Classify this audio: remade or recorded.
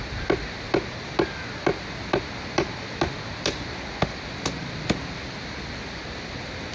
recorded